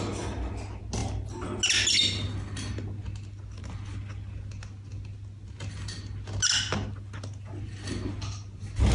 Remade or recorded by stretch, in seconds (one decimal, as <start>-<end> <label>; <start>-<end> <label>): 0.0-8.9 recorded